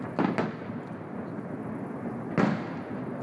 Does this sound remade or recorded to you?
recorded